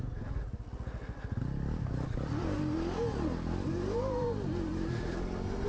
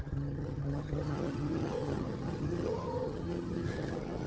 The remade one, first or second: second